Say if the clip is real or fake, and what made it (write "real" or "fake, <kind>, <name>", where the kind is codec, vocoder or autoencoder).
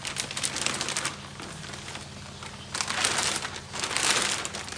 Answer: real